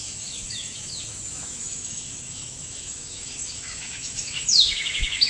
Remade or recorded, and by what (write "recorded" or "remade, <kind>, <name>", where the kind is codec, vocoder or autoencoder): remade, autoencoder, DAC-VAE